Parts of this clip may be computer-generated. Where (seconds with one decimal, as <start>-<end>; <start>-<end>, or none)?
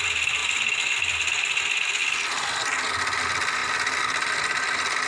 none